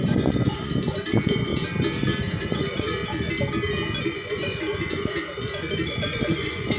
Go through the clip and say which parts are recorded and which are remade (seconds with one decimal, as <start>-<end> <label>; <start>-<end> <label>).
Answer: 0.0-1.5 remade; 1.5-2.2 recorded; 2.2-3.0 remade; 3.0-4.0 recorded; 4.0-6.8 remade